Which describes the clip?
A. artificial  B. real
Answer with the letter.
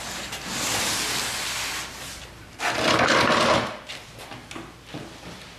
B